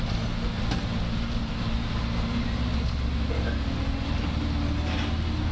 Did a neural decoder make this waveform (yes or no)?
no